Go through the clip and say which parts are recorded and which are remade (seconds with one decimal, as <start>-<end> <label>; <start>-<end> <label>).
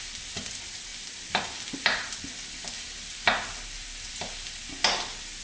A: 0.0-5.4 recorded